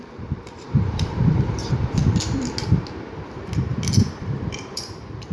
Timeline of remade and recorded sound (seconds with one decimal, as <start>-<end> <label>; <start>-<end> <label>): 0.0-2.4 remade; 2.4-4.2 recorded; 4.2-5.3 remade